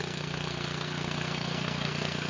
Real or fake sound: fake